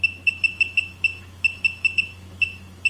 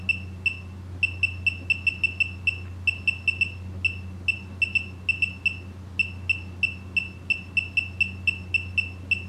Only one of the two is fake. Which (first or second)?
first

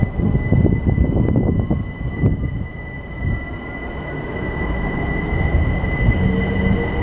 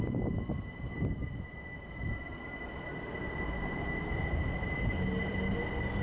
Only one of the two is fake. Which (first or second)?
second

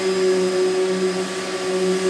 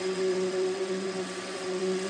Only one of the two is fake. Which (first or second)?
second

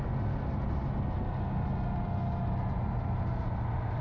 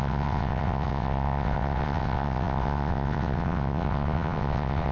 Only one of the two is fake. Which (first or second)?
second